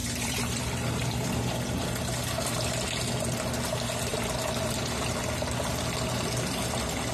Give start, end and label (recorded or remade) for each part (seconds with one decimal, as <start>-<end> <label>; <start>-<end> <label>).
0.0-1.3 remade; 1.3-4.1 recorded; 4.1-5.7 remade; 5.7-7.1 recorded